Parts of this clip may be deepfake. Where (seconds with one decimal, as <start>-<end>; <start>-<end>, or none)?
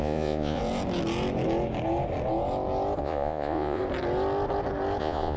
0.0-0.6; 3.0-3.8; 5.0-5.4